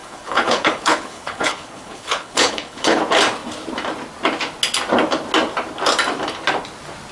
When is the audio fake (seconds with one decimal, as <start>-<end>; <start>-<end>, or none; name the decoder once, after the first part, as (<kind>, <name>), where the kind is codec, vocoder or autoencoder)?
0.0-3.0 (codec, HILCodec)